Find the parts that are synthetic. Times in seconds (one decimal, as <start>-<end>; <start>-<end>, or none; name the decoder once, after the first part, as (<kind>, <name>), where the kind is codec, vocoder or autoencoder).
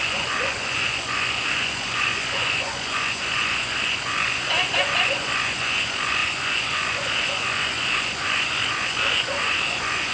0.0-10.1 (vocoder, Vocos)